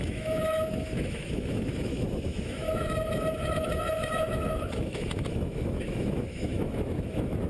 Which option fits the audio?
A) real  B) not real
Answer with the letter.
B